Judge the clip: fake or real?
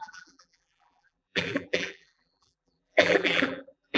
fake